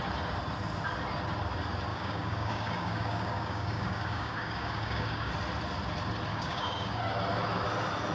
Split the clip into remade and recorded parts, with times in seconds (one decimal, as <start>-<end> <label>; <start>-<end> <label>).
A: 0.0-1.9 recorded; 1.9-5.3 remade; 5.3-6.3 recorded; 6.3-7.0 remade; 7.0-8.1 recorded